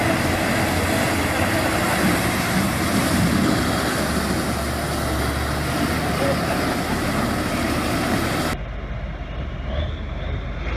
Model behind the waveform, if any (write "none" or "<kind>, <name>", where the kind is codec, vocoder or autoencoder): none